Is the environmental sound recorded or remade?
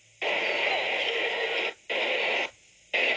recorded